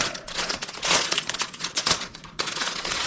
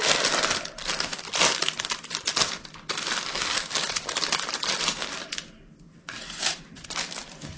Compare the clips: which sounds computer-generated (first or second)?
first